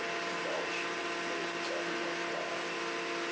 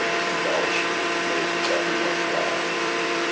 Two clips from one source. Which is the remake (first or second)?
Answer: second